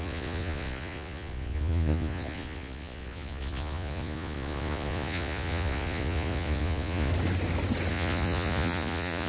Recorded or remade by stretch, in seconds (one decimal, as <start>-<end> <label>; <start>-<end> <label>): 0.0-7.1 remade; 7.1-7.9 recorded; 7.9-9.3 remade